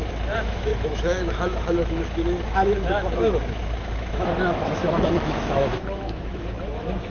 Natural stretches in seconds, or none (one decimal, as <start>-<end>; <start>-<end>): none